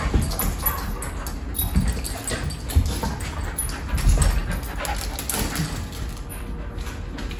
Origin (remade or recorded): recorded